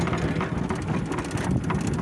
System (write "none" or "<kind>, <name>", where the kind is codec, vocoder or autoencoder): none